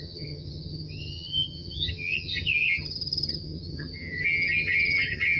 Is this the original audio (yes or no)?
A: no